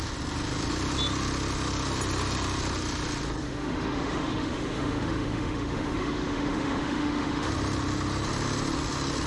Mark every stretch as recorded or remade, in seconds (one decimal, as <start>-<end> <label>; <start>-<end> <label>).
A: 0.0-3.4 recorded; 3.4-7.5 remade; 7.5-9.3 recorded